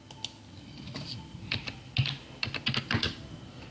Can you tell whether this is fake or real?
real